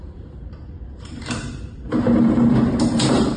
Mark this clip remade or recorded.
remade